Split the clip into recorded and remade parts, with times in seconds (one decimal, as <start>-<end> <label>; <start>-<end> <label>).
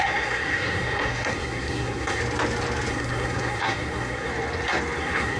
0.0-2.2 remade; 2.2-2.9 recorded; 2.9-4.3 remade; 4.3-5.0 recorded; 5.0-5.4 remade